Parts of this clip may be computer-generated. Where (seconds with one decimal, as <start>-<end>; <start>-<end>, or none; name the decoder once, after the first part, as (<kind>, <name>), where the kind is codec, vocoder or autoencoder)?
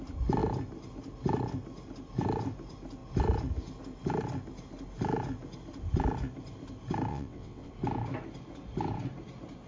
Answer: 7.1-7.7 (vocoder, WaveNeXt)